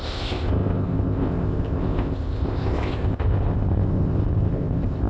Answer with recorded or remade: remade